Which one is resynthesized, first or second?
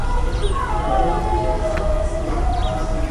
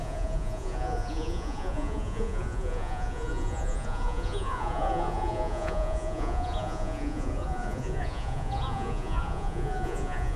second